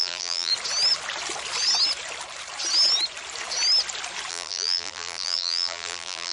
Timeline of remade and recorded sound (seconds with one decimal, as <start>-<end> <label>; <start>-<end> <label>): 0.0-0.5 remade; 0.5-4.3 recorded; 4.3-6.3 remade